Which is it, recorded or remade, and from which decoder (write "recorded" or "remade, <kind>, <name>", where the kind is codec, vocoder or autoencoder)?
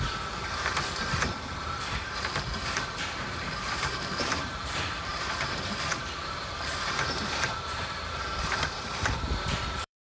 remade, vocoder, BigVGAN v2